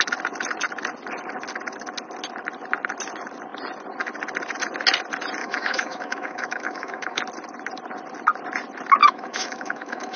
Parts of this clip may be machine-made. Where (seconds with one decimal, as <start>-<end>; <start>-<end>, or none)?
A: 5.4-7.2; 9.0-10.2